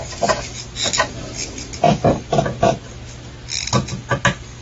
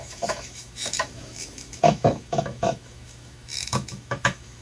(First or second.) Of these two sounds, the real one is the first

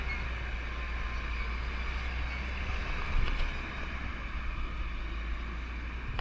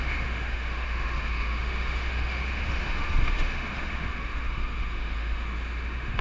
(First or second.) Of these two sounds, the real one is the first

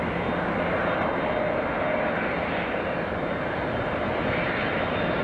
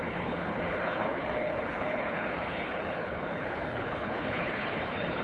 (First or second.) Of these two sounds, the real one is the first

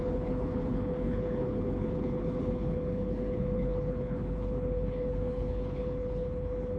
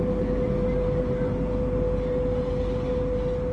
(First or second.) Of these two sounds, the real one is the second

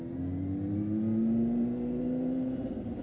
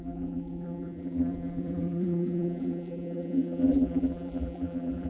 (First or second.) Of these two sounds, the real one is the first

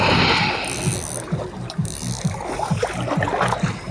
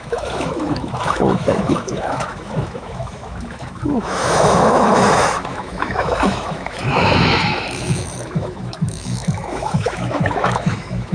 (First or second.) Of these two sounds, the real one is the first